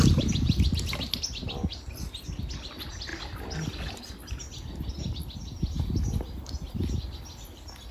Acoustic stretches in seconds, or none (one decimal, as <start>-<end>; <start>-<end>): 0.0-7.9